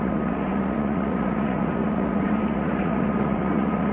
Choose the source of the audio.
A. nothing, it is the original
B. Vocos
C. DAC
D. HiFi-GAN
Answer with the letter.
B